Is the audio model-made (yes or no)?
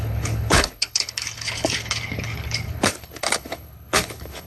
yes